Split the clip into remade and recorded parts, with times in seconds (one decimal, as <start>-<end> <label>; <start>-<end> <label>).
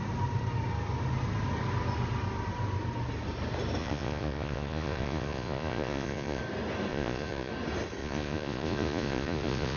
0.0-3.8 recorded; 3.8-6.4 remade; 6.4-6.9 recorded; 6.9-7.5 remade; 7.5-8.0 recorded; 8.0-9.8 remade